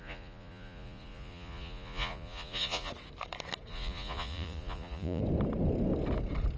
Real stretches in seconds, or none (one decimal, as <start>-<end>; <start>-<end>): 2.9-3.7; 5.2-6.6

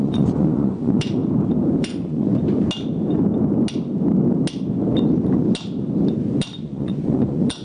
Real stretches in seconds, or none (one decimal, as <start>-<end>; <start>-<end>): 1.2-1.8; 2.3-6.6

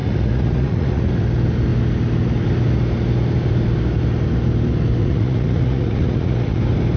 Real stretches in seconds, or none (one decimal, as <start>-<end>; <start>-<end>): 1.1-5.0; 6.6-7.0

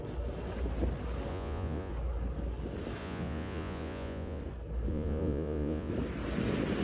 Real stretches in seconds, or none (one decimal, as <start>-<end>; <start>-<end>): 0.0-1.3; 1.9-3.0; 4.4-4.9; 5.9-6.8

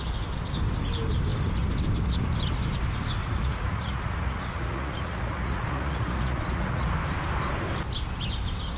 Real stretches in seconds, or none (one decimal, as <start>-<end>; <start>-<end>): 0.0-3.2; 6.9-8.8

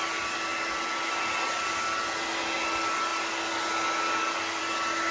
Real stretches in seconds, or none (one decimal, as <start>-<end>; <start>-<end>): 0.0-5.1

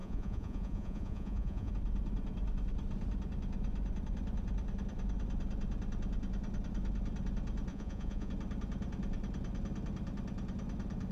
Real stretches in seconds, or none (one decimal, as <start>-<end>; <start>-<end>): 1.7-7.7; 8.3-11.1